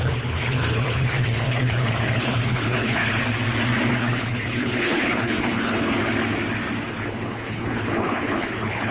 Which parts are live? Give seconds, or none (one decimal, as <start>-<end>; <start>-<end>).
3.2-3.9; 6.0-6.9